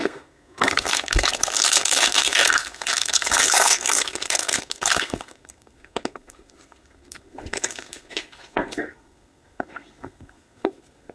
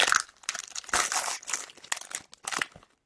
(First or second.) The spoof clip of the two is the first